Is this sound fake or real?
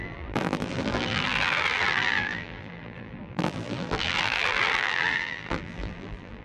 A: fake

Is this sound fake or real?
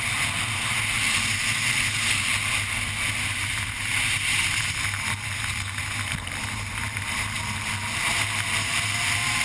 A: real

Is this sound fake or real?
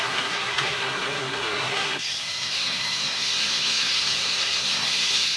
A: fake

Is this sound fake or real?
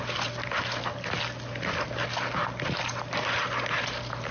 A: real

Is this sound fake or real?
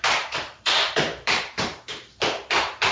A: fake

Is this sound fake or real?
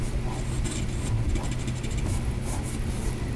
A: real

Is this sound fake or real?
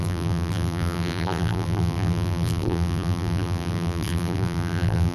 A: fake